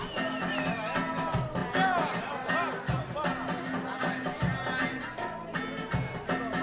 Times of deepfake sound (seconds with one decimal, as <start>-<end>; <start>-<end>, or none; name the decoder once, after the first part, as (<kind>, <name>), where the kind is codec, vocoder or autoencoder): none